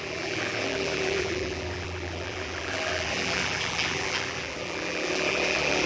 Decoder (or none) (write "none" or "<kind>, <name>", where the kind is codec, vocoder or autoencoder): vocoder, BigVGAN v2